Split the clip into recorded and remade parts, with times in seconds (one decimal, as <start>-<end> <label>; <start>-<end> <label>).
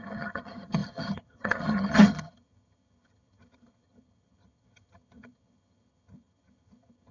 0.0-7.1 remade